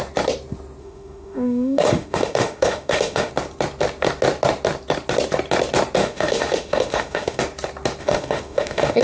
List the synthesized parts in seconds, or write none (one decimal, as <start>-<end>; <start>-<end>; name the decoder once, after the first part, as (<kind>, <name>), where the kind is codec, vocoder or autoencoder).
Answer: 0.8-3.3 (autoencoder, DAC-VAE); 6.0-7.4; 8.0-9.0